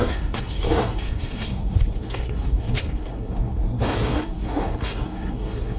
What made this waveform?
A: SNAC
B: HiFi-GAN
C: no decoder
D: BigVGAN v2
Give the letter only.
A